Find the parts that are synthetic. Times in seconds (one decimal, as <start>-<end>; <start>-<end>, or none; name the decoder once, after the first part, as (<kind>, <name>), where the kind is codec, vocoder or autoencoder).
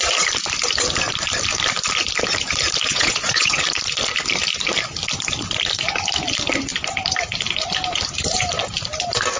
2.9-3.6 (vocoder, Vocos)